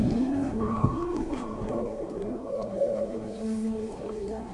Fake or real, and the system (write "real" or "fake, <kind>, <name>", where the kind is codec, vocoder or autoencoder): fake, codec, SNAC